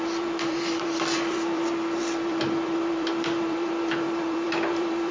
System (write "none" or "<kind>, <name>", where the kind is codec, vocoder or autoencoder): vocoder, BigVGAN v2